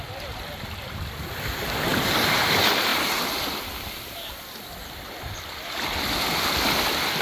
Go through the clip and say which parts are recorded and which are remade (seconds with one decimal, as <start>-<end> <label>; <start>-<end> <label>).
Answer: 0.0-2.9 remade; 2.9-3.7 recorded; 3.7-7.2 remade